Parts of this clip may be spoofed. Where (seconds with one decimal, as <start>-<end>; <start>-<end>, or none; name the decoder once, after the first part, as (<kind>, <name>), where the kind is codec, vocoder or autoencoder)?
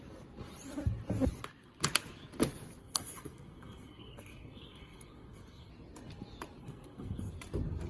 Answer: 2.8-5.7 (codec, SNAC); 6.6-7.3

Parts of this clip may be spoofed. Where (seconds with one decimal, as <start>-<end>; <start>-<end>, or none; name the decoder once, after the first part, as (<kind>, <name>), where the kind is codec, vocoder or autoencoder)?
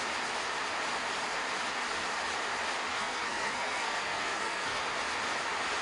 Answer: 2.9-4.8 (codec, SNAC)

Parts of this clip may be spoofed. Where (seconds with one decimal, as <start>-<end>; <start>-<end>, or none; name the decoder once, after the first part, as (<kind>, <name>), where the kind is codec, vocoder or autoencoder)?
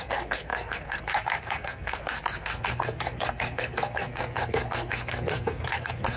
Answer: 0.0-6.2 (codec, SNAC)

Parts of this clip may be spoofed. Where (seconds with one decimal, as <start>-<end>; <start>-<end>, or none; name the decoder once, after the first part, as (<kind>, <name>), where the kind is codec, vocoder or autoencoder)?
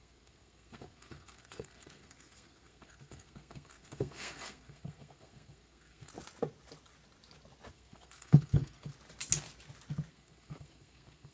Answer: 0.0-6.1 (codec, SNAC); 7.7-8.9; 10.1-11.3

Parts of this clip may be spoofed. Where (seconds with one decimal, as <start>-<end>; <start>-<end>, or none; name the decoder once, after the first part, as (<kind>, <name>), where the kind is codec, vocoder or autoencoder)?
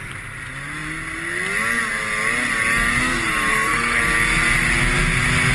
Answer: 3.5-4.0 (codec, SNAC)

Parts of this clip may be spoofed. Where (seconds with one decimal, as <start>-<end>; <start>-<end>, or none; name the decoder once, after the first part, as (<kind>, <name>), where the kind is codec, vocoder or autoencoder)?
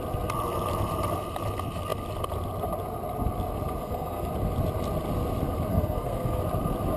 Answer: 3.8-4.3 (codec, SNAC); 5.7-6.4